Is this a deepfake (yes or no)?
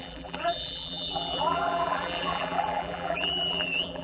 yes